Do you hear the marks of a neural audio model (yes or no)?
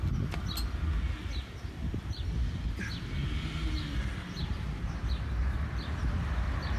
no